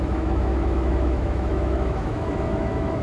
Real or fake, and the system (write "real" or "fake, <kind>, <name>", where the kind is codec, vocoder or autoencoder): fake, autoencoder, DAC-VAE